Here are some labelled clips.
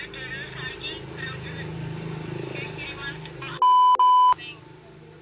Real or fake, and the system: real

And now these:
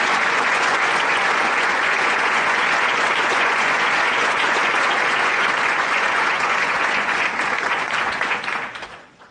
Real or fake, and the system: fake, vocoder, Vocos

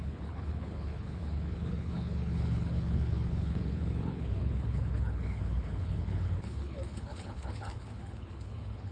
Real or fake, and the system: fake, codec, HILCodec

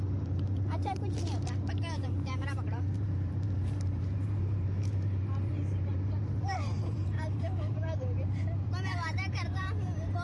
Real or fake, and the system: fake, vocoder, BigVGAN v2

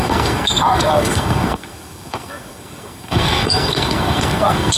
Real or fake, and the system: fake, codec, SNAC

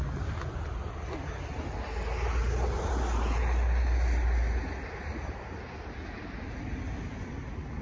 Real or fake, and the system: real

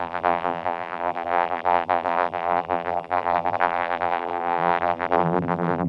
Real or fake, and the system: fake, vocoder, BigVGAN v2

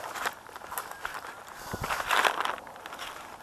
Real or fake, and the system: real